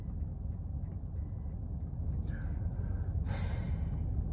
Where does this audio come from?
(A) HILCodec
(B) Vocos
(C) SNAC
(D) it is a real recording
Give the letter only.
D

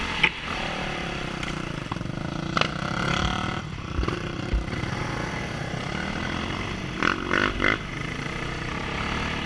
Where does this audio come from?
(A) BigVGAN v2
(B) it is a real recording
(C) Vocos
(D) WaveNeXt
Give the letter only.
A